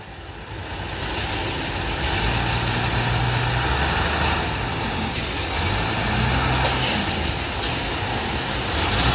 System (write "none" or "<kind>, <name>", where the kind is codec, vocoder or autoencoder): none